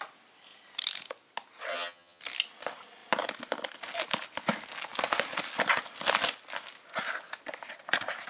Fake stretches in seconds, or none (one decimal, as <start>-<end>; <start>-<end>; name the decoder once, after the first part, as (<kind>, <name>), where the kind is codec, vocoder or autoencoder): 1.7-2.2 (vocoder, HiFi-GAN)